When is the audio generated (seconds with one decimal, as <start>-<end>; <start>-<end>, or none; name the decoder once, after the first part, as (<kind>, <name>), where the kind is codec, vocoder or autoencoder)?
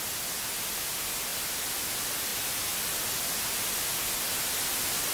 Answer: none